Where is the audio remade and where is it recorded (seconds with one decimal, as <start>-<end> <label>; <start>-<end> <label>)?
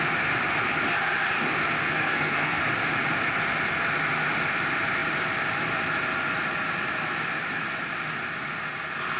0.0-1.8 recorded; 1.8-2.6 remade; 2.6-9.2 recorded